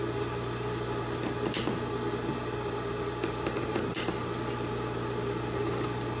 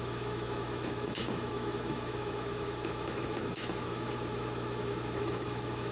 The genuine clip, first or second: first